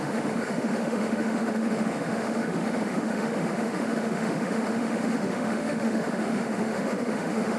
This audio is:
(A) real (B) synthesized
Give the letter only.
B